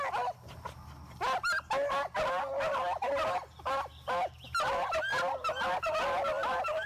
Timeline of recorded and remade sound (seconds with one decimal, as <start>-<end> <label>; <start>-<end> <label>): 0.0-6.9 recorded